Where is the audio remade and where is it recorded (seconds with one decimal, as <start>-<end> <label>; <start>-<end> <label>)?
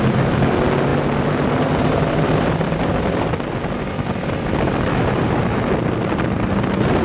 0.0-7.0 recorded